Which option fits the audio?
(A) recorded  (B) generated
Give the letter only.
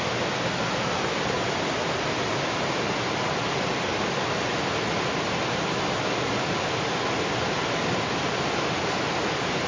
A